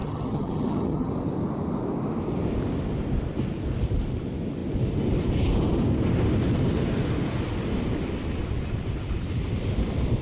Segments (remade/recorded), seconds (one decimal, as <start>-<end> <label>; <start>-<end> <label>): 0.0-1.1 remade; 1.1-10.2 recorded